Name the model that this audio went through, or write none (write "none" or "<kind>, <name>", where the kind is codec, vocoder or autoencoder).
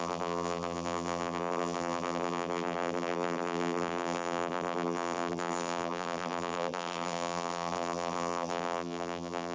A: vocoder, BigVGAN v2